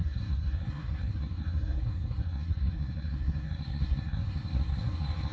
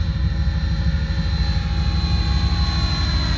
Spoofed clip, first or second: first